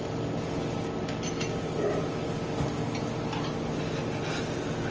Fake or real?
real